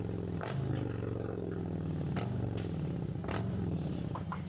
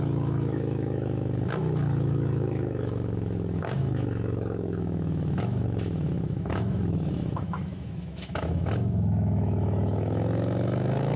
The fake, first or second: second